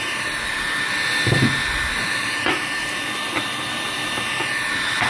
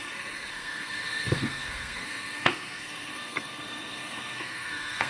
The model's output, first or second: second